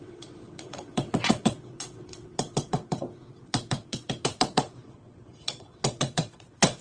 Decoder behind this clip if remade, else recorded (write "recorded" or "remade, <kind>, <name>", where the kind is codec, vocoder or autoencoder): remade, vocoder, WaveNeXt